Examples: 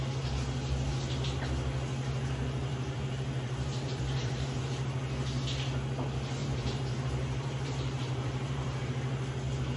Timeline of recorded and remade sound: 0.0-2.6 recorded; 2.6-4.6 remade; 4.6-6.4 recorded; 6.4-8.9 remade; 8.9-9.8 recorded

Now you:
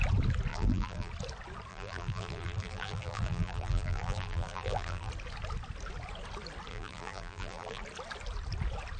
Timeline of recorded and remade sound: 0.0-0.5 recorded; 0.5-1.1 remade; 1.1-1.7 recorded; 1.7-5.1 remade; 5.1-6.7 recorded; 6.7-7.8 remade; 7.8-9.0 recorded

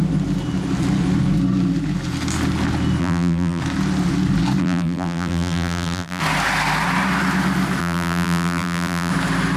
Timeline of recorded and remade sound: 0.0-3.0 recorded; 3.0-3.6 remade; 3.6-4.6 recorded; 4.6-6.2 remade; 6.2-7.8 recorded; 7.8-9.1 remade; 9.1-9.6 recorded

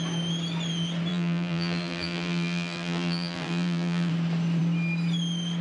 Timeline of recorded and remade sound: 0.0-1.1 recorded; 1.1-4.1 remade; 4.1-5.6 recorded

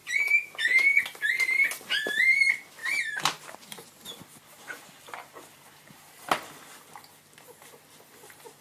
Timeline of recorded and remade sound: 0.0-2.8 recorded; 2.8-6.3 remade; 6.3-8.6 recorded